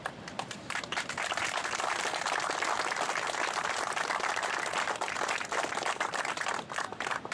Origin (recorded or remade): recorded